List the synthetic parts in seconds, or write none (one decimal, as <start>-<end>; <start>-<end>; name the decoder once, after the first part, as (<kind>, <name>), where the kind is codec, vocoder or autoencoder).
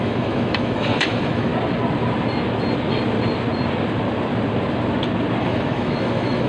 0.0-1.5 (autoencoder, DAC-VAE); 5.4-6.5